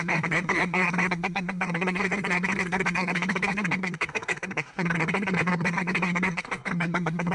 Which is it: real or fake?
fake